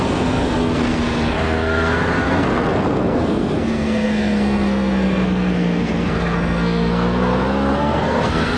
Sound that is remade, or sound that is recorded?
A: remade